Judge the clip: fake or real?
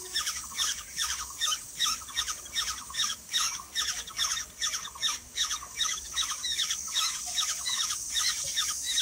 fake